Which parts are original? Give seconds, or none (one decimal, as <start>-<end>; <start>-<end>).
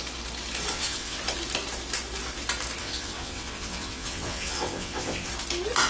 0.0-0.7; 1.2-2.8; 5.3-5.9